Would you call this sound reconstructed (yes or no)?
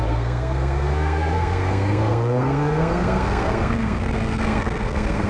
yes